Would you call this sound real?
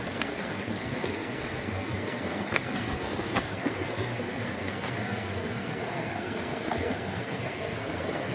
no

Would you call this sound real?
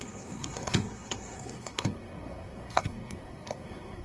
no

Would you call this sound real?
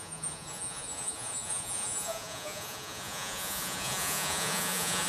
no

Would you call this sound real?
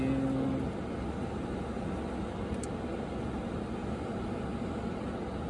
yes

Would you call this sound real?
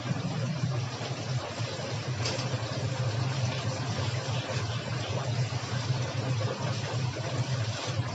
yes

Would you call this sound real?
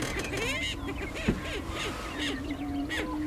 yes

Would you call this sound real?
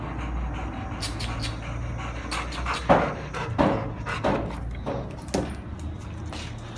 yes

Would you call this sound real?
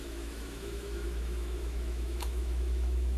no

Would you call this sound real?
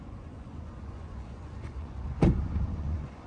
no